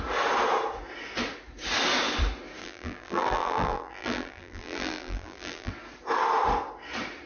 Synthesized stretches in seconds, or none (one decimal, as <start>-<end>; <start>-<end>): 2.6-5.7